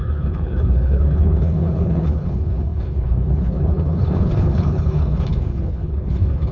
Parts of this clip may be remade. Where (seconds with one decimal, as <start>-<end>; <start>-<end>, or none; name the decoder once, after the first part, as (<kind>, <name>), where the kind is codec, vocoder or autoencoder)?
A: 0.0-6.5 (codec, HILCodec)